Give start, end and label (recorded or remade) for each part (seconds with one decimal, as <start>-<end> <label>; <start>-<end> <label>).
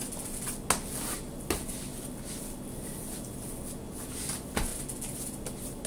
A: 0.0-5.9 recorded